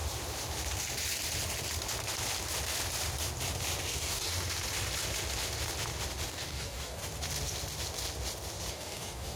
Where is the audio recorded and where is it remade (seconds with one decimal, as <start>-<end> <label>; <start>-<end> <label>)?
0.0-3.9 recorded; 3.9-4.3 remade; 4.3-6.3 recorded; 6.3-7.0 remade; 7.0-8.7 recorded; 8.7-9.4 remade